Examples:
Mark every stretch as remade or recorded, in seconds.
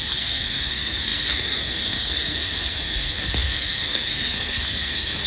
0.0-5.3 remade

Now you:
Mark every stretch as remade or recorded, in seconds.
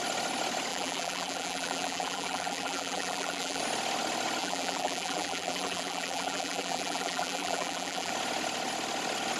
0.0-0.7 recorded; 0.7-3.6 remade; 3.6-4.4 recorded; 4.4-8.1 remade; 8.1-9.4 recorded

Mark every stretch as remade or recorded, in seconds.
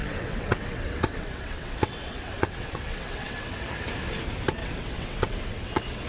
0.0-3.7 remade; 3.7-4.6 recorded; 4.6-6.1 remade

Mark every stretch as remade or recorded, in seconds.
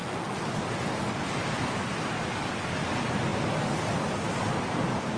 0.0-5.2 recorded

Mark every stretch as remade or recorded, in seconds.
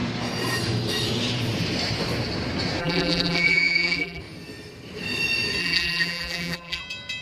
0.0-2.8 recorded; 2.8-4.2 remade; 4.2-5.6 recorded; 5.6-6.8 remade; 6.8-7.2 recorded